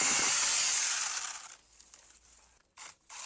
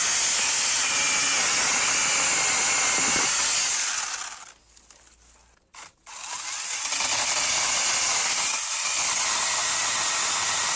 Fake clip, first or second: first